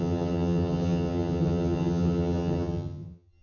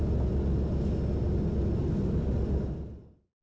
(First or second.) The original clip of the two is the second